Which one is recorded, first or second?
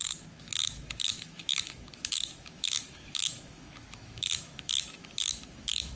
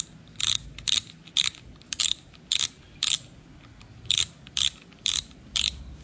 second